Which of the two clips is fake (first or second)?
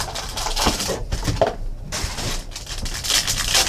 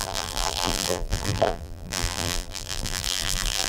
second